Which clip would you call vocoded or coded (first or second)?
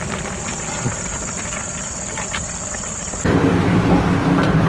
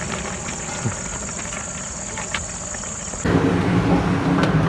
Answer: first